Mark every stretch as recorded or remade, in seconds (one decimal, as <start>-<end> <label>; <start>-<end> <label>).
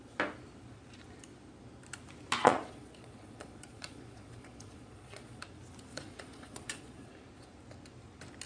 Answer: 0.0-2.4 recorded; 2.4-5.4 remade; 5.4-5.9 recorded; 5.9-7.1 remade; 7.1-8.5 recorded